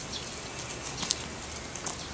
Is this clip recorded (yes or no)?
yes